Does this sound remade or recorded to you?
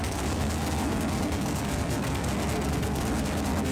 remade